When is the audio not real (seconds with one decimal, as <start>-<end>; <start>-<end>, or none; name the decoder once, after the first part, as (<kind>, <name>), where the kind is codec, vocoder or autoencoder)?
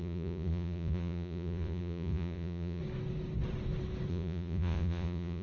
0.0-2.8 (vocoder, Vocos); 4.1-5.4